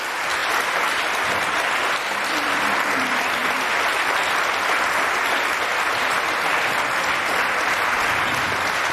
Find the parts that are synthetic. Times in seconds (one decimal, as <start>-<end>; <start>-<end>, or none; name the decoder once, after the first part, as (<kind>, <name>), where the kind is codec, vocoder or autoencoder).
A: none